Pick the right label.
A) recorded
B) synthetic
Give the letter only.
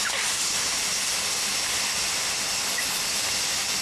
A